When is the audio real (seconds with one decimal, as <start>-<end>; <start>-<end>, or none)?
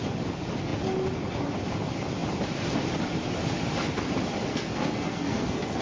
0.0-4.5